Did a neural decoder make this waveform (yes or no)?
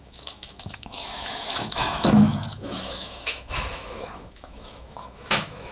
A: yes